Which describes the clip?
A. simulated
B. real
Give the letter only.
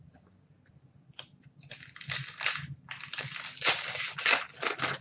B